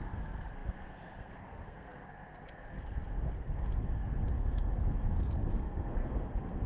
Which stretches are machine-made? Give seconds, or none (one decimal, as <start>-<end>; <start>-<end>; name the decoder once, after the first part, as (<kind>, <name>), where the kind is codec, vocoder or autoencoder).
0.0-6.7 (codec, SNAC)